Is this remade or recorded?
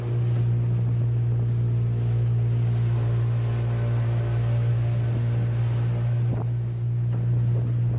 recorded